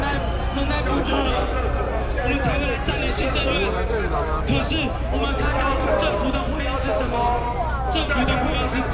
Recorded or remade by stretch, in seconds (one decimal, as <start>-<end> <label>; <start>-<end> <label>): 0.0-0.9 recorded; 0.9-1.5 remade; 1.5-8.9 recorded